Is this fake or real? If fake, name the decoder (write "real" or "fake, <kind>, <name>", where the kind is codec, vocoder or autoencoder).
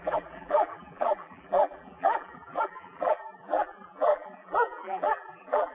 fake, vocoder, BigVGAN v2